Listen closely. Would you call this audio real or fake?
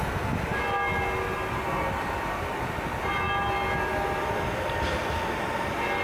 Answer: real